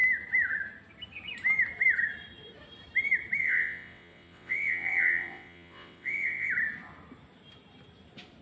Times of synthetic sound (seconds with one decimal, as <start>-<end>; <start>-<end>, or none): 3.4-6.5